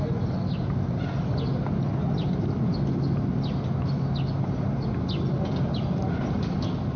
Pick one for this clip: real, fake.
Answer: real